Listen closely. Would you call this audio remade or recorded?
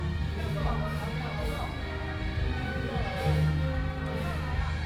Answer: recorded